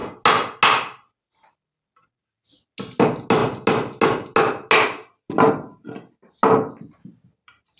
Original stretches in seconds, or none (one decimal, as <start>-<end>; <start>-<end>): 0.0-7.8